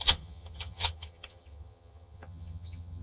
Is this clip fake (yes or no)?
yes